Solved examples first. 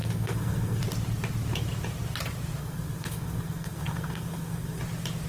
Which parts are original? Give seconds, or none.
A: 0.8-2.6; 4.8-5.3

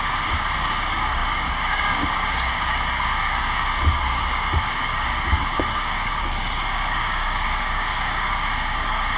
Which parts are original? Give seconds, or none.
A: none